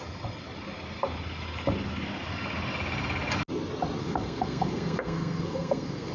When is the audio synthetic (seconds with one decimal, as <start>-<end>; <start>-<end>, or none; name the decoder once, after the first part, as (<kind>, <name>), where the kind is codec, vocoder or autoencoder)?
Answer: 4.0-6.1 (codec, SNAC)